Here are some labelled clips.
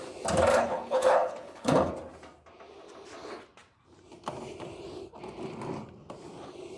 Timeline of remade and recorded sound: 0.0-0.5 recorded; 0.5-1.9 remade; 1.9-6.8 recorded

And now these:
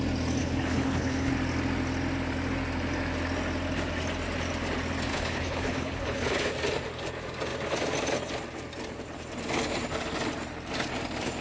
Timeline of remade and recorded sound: 0.0-0.4 recorded; 0.4-1.3 remade; 1.3-5.1 recorded; 5.1-6.5 remade; 6.5-11.4 recorded